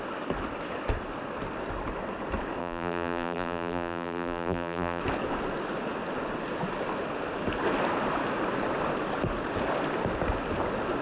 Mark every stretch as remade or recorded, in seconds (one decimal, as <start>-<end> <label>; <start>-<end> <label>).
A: 0.0-2.6 recorded; 2.6-5.0 remade; 5.0-11.0 recorded